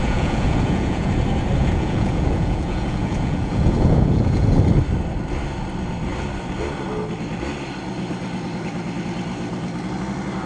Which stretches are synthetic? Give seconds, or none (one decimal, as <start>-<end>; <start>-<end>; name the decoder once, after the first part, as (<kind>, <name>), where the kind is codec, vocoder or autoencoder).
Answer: 0.0-1.1 (vocoder, Vocos); 1.6-4.6